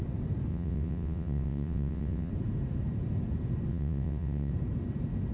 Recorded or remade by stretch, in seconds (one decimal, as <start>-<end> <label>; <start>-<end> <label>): 0.0-0.5 recorded; 0.5-2.3 remade; 2.3-3.7 recorded; 3.7-4.5 remade; 4.5-5.3 recorded